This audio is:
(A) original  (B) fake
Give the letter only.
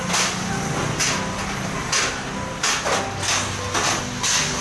A